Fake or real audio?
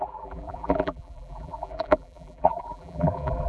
fake